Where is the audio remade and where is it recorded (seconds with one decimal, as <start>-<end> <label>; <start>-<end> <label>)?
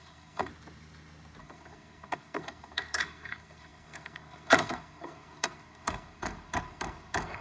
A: 0.0-0.5 remade; 0.5-1.4 recorded; 1.4-7.4 remade